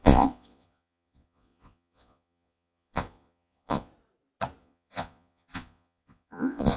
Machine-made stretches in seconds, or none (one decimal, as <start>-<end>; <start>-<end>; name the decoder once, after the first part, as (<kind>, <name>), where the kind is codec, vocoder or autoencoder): 0.0-3.9 (vocoder, Vocos); 4.6-6.8